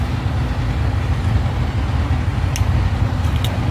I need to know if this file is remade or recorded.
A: recorded